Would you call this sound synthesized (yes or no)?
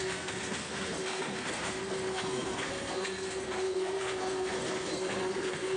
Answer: yes